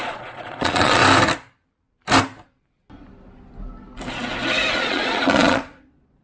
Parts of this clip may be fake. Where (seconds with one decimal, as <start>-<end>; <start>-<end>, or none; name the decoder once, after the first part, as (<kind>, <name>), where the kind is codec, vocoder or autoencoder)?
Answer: 0.0-1.0 (vocoder, Vocos); 4.7-6.2